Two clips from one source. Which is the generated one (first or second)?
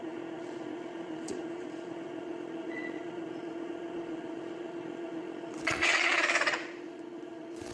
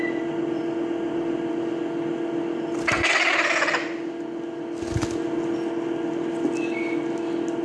first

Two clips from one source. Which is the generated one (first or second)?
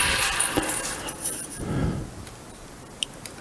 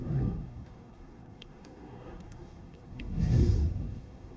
second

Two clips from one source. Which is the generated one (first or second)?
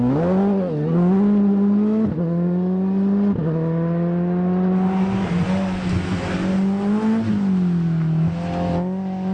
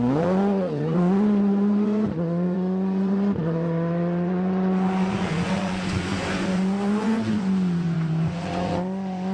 second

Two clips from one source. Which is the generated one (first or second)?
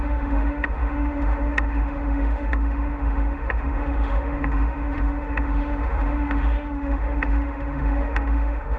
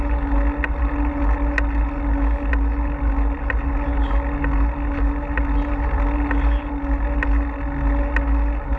first